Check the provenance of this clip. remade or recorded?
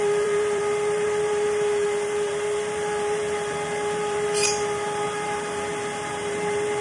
remade